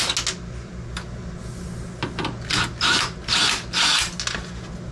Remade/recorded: recorded